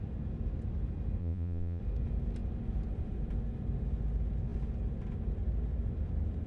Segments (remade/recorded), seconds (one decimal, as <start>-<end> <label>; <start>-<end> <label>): 0.0-1.2 recorded; 1.2-1.8 remade; 1.8-6.5 recorded